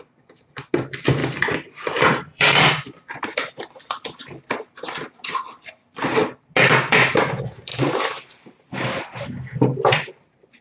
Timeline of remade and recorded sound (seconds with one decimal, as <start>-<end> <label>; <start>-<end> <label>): 0.0-1.2 recorded; 1.2-5.7 remade; 5.7-7.7 recorded; 7.7-9.6 remade; 9.6-10.6 recorded

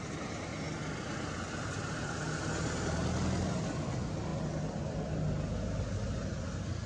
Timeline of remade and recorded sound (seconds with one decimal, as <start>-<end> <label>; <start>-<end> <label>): 0.0-6.9 recorded

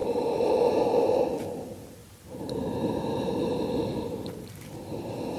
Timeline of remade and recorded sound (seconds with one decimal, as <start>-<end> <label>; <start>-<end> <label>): 0.0-1.3 remade; 1.3-2.0 recorded; 2.0-5.4 remade

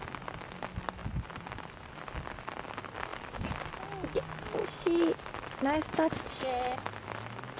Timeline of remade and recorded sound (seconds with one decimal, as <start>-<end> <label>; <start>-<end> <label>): 0.0-7.6 recorded